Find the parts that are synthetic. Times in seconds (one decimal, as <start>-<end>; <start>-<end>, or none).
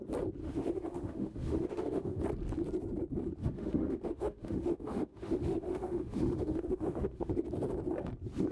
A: 0.4-2.2; 3.4-7.3